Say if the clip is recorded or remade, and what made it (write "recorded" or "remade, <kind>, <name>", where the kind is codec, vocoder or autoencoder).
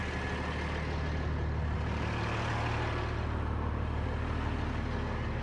recorded